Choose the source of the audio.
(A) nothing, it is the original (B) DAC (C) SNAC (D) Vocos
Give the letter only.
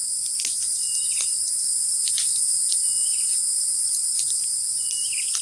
A